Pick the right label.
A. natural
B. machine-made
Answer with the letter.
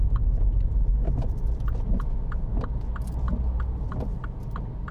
A